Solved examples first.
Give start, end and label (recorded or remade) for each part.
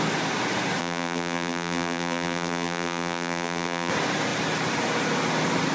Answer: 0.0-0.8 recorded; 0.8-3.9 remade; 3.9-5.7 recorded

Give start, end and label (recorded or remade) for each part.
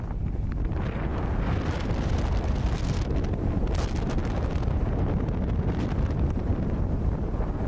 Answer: 0.0-7.7 recorded